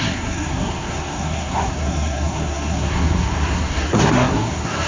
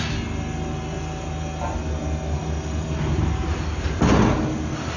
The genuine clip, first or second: second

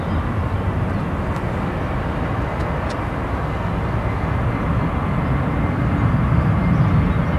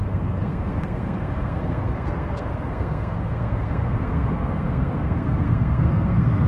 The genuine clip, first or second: first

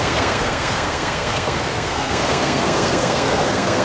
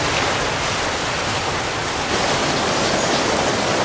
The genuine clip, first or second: second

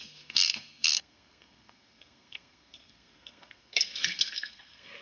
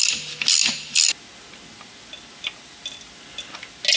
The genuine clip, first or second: second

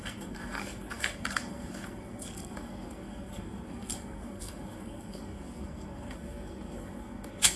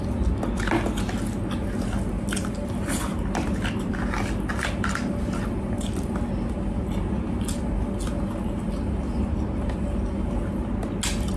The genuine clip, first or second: second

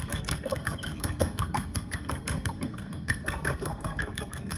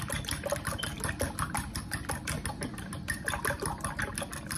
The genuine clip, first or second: second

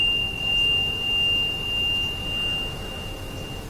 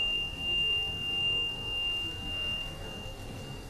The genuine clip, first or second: first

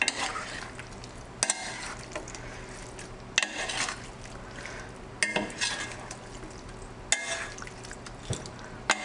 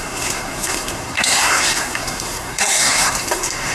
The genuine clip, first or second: first